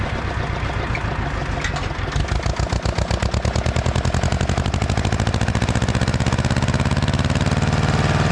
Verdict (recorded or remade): recorded